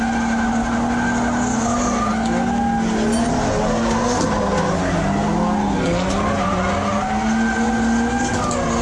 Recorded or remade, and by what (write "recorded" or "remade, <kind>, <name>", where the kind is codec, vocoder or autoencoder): recorded